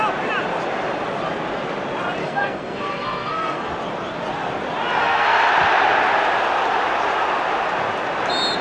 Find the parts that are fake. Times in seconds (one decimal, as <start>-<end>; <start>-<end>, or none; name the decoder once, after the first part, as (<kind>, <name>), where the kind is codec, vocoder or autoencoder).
2.2-3.7 (codec, SNAC); 5.0-5.5